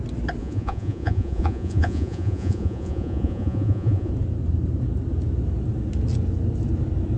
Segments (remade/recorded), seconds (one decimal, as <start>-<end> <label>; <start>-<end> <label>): 0.0-0.4 recorded; 0.4-4.1 remade; 4.1-7.2 recorded